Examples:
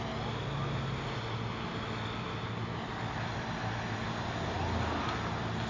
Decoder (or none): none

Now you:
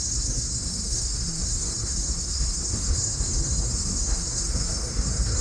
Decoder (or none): codec, SNAC